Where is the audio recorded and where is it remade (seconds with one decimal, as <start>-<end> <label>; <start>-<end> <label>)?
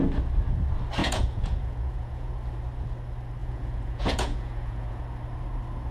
0.0-1.0 recorded; 1.0-2.3 remade; 2.3-3.4 recorded; 3.4-5.0 remade; 5.0-5.9 recorded